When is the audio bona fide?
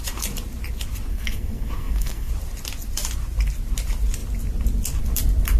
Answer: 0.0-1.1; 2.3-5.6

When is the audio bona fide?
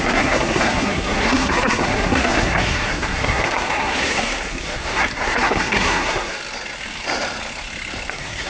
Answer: 6.4-8.1